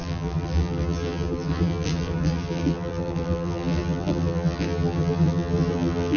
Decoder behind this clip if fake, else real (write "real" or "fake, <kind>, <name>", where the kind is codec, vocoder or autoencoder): fake, vocoder, BigVGAN v2